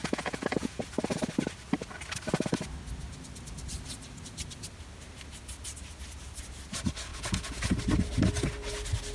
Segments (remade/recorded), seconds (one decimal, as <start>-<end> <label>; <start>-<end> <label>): 0.0-0.8 remade; 0.8-7.1 recorded; 7.1-7.6 remade; 7.6-9.1 recorded